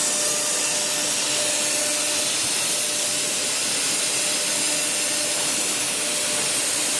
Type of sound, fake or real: real